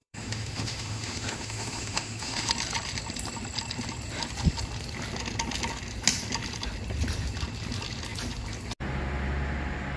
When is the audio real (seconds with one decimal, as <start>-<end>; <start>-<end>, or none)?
2.5-10.0